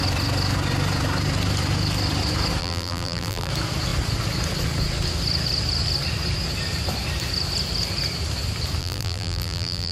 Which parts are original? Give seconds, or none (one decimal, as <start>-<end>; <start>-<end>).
0.0-2.6; 3.5-8.8